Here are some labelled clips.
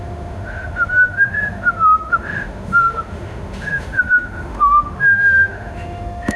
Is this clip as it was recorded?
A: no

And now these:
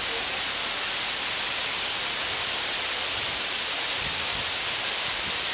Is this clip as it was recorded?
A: yes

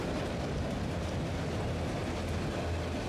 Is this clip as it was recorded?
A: yes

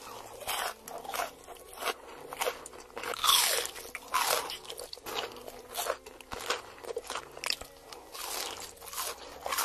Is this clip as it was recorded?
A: yes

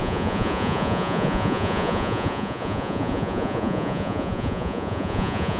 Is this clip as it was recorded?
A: no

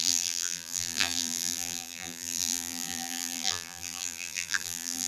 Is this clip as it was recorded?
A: no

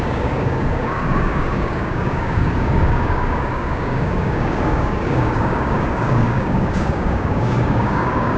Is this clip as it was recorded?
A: no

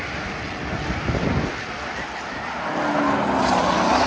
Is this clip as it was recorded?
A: yes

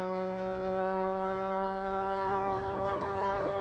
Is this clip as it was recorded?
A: no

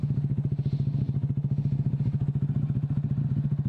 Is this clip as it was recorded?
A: yes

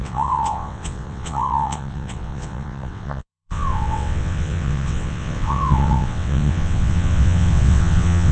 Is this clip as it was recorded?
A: no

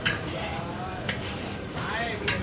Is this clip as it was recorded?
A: no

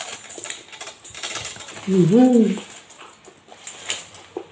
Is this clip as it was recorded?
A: yes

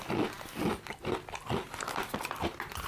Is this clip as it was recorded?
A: yes